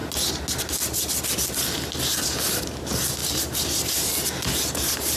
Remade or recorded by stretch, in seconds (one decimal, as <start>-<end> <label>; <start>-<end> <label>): 0.0-3.2 recorded; 3.2-4.1 remade; 4.1-5.2 recorded